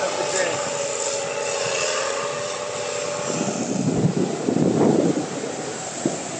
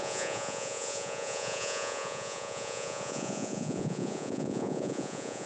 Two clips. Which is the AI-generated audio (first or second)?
second